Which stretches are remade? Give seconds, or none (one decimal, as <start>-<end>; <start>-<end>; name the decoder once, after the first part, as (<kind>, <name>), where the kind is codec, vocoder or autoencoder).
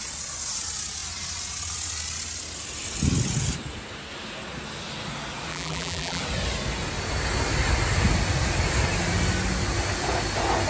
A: 5.5-6.2 (vocoder, BigVGAN v2)